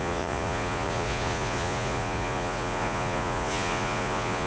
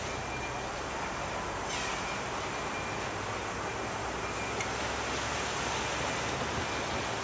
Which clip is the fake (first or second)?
first